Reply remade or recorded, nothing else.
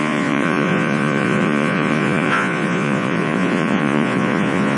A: remade